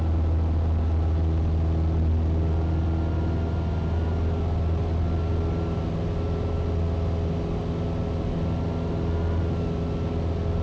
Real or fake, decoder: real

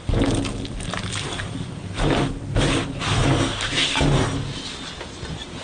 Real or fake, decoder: real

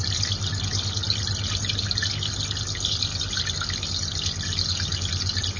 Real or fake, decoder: real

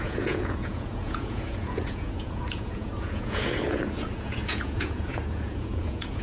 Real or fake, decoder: fake, vocoder, Vocos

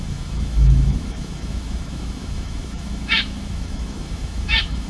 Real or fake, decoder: fake, autoencoder, DAC-VAE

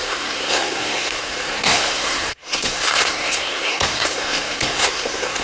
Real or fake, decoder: fake, codec, SNAC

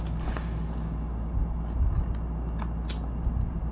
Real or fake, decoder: real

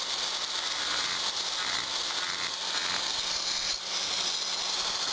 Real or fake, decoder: real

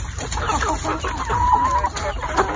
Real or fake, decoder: real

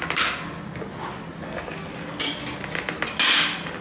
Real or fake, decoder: real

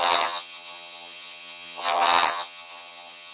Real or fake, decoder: fake, vocoder, HiFi-GAN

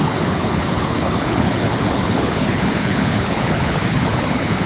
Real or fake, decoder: fake, codec, HILCodec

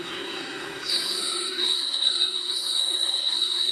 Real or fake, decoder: fake, codec, SNAC